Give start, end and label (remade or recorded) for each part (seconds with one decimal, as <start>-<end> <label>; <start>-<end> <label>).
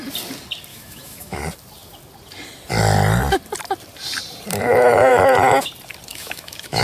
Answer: 0.0-0.7 recorded; 0.7-1.4 remade; 1.4-6.1 recorded; 6.1-6.8 remade